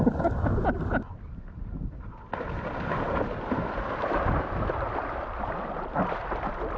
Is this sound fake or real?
real